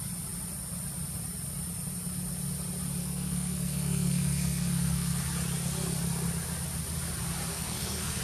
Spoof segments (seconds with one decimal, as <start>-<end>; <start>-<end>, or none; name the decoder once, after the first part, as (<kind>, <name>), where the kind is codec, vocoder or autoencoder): 3.0-5.2 (codec, SNAC); 7.5-8.2

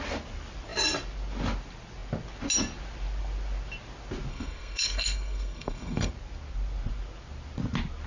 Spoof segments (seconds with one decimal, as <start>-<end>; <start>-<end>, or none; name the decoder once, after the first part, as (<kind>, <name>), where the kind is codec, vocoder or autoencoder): 4.3-6.1 (codec, SNAC)